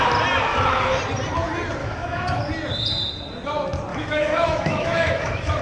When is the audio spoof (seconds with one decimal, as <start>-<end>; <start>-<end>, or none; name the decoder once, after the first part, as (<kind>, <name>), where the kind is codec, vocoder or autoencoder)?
0.5-1.0 (autoencoder, DAC-VAE); 1.8-2.4; 3.9-5.6